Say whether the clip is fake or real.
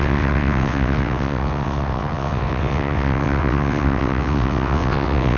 fake